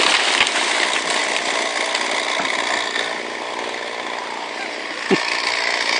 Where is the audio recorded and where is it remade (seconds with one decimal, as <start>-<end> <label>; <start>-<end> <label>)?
0.0-6.0 recorded